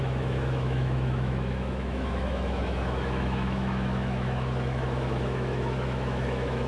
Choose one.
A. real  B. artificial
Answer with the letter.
B